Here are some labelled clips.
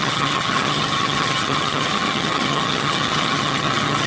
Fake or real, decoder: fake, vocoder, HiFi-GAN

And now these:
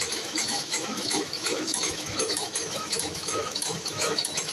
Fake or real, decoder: fake, autoencoder, DAC-VAE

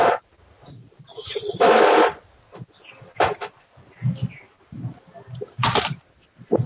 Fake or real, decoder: real